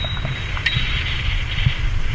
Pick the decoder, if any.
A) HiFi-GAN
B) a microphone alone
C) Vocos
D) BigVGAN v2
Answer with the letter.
D